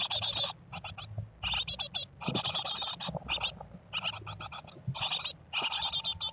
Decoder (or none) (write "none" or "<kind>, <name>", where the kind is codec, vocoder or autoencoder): none